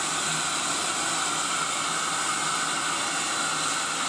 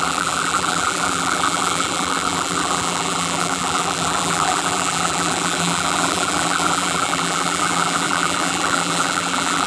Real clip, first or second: first